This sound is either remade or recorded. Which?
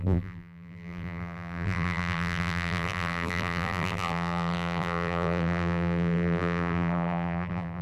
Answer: remade